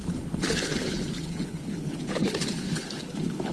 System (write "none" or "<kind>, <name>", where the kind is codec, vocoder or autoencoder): codec, HILCodec